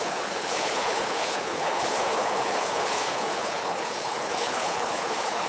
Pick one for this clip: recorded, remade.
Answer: remade